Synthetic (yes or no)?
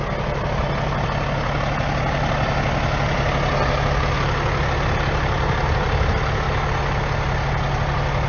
no